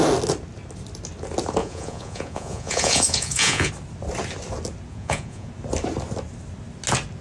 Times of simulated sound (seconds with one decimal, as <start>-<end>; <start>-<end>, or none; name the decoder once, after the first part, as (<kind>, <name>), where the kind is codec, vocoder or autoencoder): 1.6-3.7 (vocoder, Vocos); 4.9-5.5